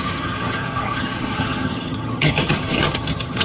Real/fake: fake